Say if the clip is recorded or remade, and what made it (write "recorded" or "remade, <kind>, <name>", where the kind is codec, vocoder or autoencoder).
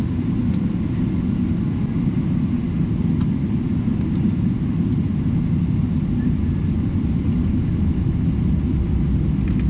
recorded